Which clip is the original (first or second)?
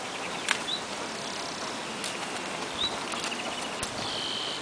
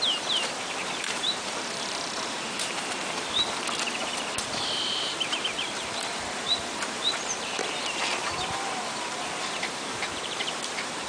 first